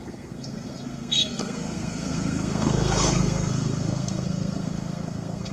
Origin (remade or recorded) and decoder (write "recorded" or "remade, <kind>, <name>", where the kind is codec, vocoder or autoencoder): remade, codec, SNAC